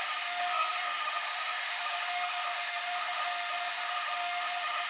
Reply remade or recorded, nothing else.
remade